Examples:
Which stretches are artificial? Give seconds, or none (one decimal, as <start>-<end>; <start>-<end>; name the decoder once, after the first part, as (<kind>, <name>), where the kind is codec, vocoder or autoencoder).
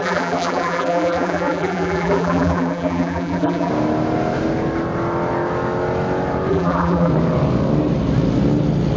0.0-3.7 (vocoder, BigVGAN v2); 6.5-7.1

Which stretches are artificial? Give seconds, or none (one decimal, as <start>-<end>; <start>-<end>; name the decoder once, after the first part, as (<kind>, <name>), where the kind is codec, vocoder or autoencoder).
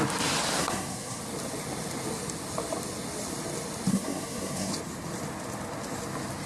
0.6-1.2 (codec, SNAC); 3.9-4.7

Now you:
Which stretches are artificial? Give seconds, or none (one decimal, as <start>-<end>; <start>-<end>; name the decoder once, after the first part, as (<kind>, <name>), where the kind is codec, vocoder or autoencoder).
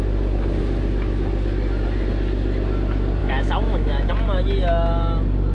3.2-4.1 (autoencoder, DAC-VAE)